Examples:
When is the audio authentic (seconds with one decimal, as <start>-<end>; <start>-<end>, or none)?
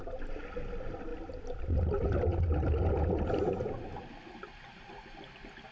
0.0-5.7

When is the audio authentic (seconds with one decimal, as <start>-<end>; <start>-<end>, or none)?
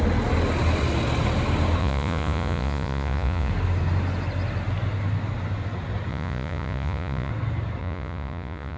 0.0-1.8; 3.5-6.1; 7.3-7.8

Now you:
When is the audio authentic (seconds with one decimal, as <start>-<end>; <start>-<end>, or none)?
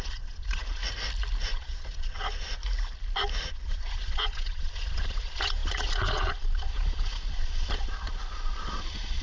0.8-1.4; 2.6-3.5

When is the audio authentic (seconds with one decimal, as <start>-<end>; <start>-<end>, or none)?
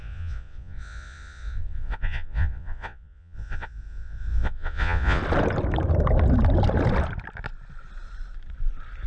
5.2-9.1